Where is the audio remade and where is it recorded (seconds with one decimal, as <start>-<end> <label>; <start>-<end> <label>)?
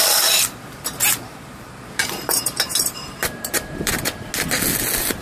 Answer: 0.0-1.3 recorded; 1.3-3.9 remade; 3.9-5.2 recorded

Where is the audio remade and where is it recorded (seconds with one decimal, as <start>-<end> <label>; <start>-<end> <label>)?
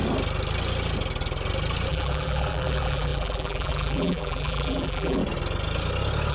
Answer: 0.0-1.9 recorded; 1.9-5.2 remade; 5.2-6.3 recorded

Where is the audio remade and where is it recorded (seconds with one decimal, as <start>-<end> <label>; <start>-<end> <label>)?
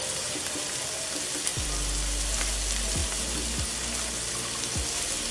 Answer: 0.0-5.3 recorded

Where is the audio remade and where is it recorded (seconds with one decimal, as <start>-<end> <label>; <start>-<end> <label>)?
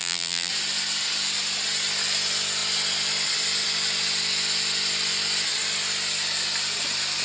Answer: 0.0-0.5 remade; 0.5-7.2 recorded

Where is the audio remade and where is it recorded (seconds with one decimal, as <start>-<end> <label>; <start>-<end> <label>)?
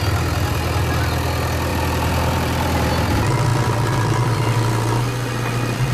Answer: 0.0-1.7 recorded; 1.7-2.9 remade; 2.9-3.5 recorded; 3.5-4.7 remade; 4.7-5.9 recorded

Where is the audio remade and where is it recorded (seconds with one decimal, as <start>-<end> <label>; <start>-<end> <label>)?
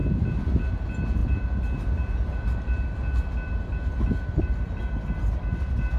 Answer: 0.0-6.0 recorded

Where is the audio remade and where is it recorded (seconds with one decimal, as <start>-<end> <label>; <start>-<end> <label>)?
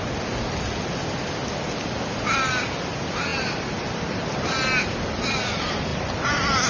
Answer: 0.0-3.3 recorded; 3.3-4.0 remade; 4.0-5.9 recorded; 5.9-6.7 remade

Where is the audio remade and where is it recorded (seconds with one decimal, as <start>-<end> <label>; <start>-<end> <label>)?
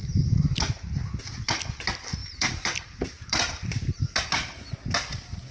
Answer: 0.0-0.6 remade; 0.6-2.2 recorded; 2.2-4.0 remade; 4.0-5.5 recorded